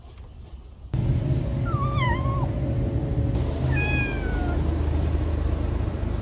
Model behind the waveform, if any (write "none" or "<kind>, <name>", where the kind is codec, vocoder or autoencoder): none